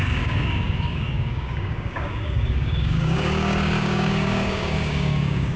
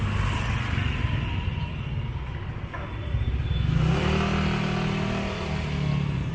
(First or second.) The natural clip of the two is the second